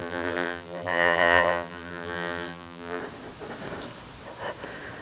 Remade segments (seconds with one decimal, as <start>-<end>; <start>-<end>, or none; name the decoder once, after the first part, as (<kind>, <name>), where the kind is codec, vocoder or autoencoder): 0.0-3.0 (vocoder, BigVGAN v2)